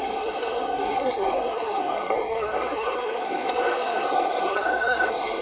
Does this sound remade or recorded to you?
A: remade